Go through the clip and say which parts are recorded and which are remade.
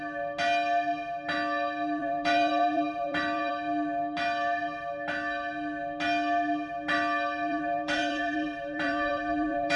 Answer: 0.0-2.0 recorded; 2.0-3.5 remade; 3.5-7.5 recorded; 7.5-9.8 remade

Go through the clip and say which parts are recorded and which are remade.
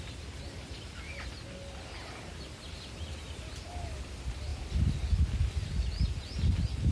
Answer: 0.0-6.9 recorded